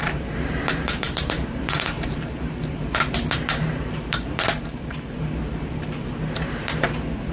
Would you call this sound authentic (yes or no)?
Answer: no